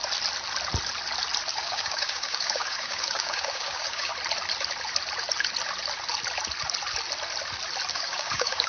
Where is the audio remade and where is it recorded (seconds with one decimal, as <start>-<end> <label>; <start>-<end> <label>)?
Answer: 0.0-1.5 recorded; 1.5-4.1 remade; 4.1-7.9 recorded; 7.9-8.7 remade